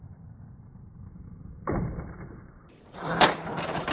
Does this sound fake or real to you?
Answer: fake